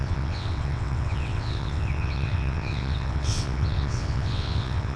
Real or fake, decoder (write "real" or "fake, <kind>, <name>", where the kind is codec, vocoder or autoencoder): fake, vocoder, WaveNeXt